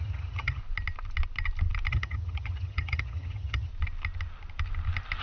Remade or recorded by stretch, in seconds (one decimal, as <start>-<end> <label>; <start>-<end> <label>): 0.0-0.6 remade; 0.6-1.9 recorded; 1.9-3.7 remade; 3.7-5.2 recorded